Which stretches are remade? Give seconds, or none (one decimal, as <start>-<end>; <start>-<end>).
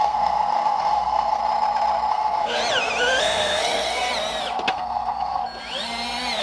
0.0-1.4; 2.1-2.6; 3.2-4.1; 4.7-5.4